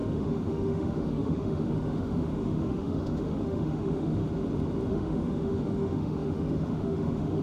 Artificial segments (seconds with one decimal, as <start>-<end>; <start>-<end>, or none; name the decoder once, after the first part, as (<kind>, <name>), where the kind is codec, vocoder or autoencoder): 0.0-4.2 (autoencoder, DAC-VAE); 4.9-7.4